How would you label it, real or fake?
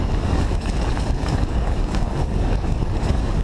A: fake